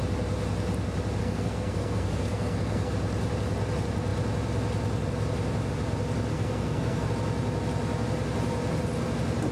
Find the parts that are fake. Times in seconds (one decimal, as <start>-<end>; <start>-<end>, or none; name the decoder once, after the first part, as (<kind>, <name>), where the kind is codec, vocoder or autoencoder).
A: 1.2-2.9 (codec, SNAC); 6.3-7.1

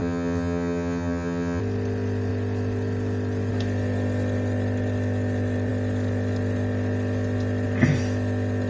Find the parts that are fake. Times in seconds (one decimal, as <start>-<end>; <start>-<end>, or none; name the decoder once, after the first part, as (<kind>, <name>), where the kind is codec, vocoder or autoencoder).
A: 0.0-1.6 (vocoder, HiFi-GAN)

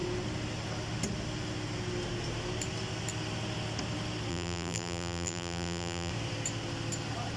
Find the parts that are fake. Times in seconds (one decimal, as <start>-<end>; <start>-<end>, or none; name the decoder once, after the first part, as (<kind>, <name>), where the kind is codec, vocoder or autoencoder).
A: 4.3-6.1 (vocoder, BigVGAN v2)

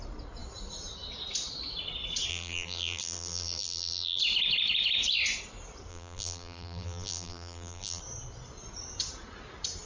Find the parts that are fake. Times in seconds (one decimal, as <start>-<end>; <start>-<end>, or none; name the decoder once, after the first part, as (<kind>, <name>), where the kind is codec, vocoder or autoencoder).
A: 2.3-4.2 (vocoder, BigVGAN v2); 5.9-8.0